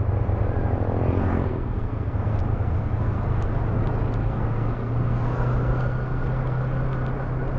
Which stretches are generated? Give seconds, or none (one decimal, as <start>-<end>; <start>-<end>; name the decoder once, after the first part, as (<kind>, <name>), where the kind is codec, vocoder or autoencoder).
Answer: 1.2-3.6 (codec, SNAC); 4.2-6.6